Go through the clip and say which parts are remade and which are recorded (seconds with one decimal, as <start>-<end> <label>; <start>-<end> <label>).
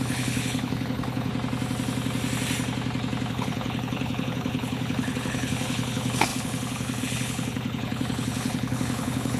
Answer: 0.0-1.3 remade; 1.3-3.3 recorded; 3.3-9.4 remade